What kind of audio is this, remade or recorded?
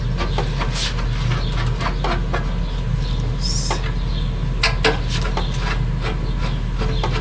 recorded